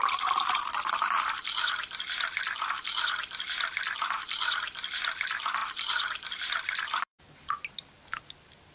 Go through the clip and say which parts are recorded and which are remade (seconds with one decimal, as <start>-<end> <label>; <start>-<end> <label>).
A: 0.0-5.6 recorded; 5.6-7.2 remade; 7.2-8.7 recorded